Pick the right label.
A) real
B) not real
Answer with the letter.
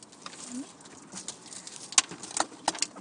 A